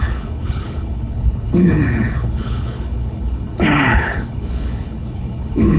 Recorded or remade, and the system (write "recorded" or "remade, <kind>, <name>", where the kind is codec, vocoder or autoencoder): remade, codec, HILCodec